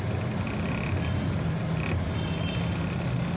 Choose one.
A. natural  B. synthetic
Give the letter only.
A